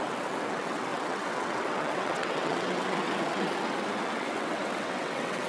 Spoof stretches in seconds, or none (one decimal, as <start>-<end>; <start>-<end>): 0.0-5.5